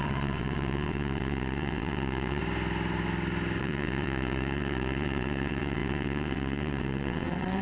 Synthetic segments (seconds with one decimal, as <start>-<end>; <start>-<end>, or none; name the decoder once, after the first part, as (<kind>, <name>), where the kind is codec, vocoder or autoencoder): 0.0-2.4 (vocoder, WaveNeXt); 3.6-7.6